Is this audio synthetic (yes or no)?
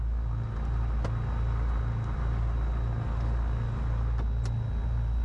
no